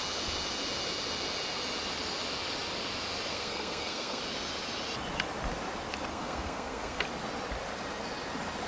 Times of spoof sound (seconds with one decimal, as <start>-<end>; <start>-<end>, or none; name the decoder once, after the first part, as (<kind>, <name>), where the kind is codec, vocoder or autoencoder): 3.3-4.2 (codec, SNAC); 6.1-7.0